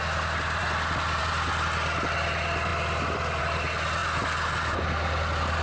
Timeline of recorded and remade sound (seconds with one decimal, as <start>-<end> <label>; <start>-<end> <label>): 0.0-5.6 recorded